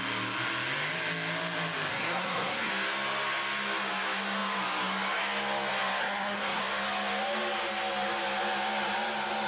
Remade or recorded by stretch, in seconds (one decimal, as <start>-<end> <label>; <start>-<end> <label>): 0.0-1.9 recorded; 1.9-2.7 remade; 2.7-6.0 recorded; 6.0-6.6 remade; 6.6-9.5 recorded